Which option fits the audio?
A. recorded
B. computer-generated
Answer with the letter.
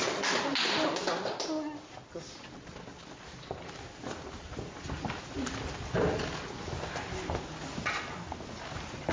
A